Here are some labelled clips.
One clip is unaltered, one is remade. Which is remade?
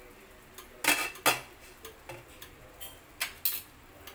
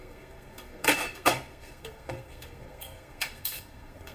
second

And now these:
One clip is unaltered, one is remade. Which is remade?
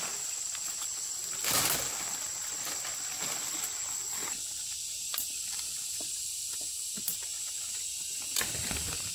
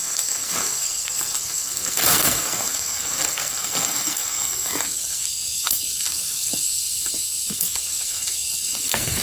second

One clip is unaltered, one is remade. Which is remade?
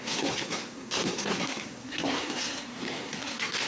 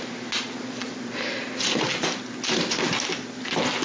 first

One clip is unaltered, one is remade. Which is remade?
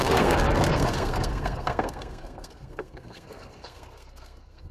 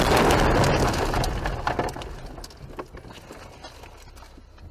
first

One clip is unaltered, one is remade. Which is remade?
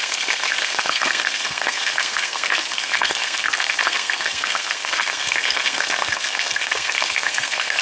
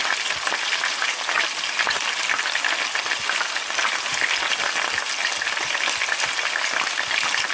first